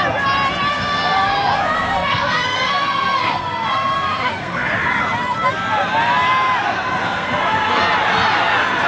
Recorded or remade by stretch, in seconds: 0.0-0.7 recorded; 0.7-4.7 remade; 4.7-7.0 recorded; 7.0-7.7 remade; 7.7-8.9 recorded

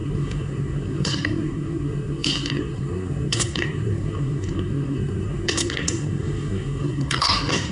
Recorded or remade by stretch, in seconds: 0.0-7.7 remade